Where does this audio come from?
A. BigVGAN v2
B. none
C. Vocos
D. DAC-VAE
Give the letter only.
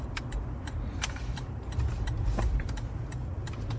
A